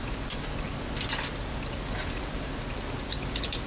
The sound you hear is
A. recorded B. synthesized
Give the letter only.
A